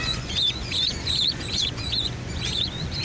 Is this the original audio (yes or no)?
no